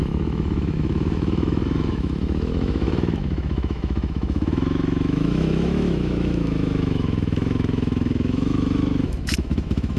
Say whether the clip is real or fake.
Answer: fake